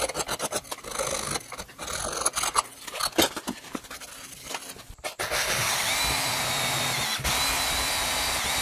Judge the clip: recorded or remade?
recorded